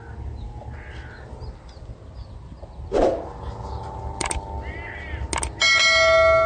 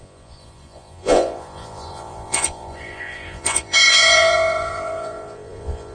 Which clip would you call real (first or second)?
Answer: first